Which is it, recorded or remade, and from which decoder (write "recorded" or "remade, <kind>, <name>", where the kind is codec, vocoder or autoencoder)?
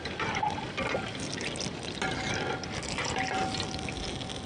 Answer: recorded